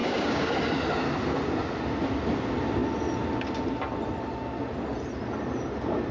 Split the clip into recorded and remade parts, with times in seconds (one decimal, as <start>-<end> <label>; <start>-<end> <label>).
0.0-0.5 remade; 0.5-6.1 recorded